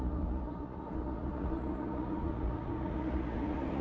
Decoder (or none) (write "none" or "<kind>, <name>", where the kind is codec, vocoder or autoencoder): vocoder, Vocos